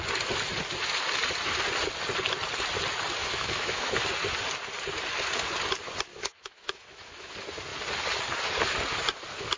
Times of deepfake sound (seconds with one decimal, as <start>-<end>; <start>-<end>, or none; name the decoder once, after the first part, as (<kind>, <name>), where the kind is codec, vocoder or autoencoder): 3.2-4.0 (autoencoder, DAC-VAE); 6.1-7.3